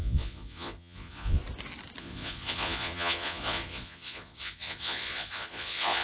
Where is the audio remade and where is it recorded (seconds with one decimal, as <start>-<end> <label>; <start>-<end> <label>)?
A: 0.0-1.4 remade; 1.4-2.0 recorded; 2.0-6.0 remade